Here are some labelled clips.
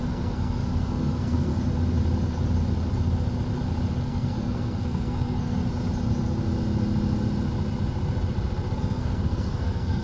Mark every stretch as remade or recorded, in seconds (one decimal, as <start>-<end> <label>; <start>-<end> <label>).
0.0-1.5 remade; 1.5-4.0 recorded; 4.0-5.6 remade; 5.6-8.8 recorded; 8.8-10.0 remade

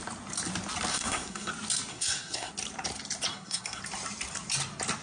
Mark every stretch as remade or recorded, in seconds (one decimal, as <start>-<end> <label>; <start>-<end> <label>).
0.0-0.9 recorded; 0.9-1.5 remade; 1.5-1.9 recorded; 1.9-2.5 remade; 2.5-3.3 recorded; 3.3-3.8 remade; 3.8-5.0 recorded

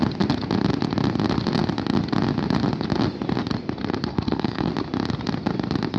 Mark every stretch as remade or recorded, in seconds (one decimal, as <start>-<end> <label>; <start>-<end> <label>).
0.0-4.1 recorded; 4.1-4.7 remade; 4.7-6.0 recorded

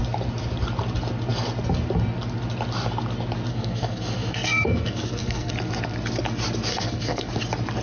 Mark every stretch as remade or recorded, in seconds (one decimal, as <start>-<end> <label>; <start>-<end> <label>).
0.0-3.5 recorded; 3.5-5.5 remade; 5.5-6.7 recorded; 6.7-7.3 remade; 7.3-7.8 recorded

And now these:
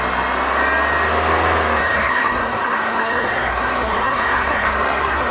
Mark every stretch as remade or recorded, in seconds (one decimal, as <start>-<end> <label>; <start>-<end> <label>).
0.0-1.8 recorded; 1.8-5.3 remade